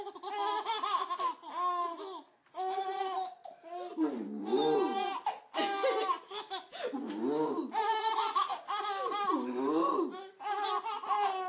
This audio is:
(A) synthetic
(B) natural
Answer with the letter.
B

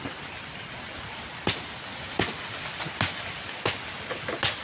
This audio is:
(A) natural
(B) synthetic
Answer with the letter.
A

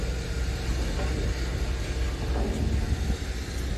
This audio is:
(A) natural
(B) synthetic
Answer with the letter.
A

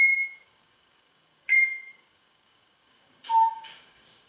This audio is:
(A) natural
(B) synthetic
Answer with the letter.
B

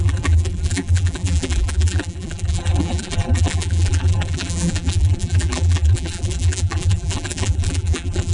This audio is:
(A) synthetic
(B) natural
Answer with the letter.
A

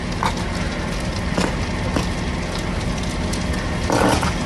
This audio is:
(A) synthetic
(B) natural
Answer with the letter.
B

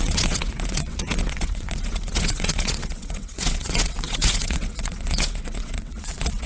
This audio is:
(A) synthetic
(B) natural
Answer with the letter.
A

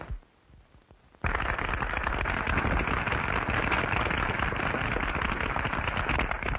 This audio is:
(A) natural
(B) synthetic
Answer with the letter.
A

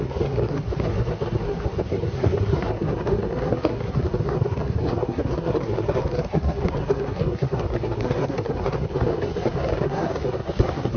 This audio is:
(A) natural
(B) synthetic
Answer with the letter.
B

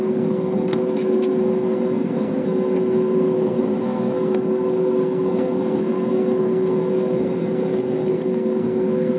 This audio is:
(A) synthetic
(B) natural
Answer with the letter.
A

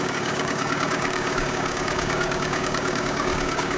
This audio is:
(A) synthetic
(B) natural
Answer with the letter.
A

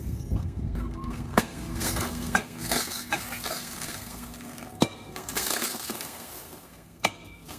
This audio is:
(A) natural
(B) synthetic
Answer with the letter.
B